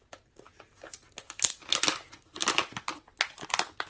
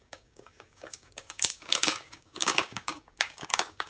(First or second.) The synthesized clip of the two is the second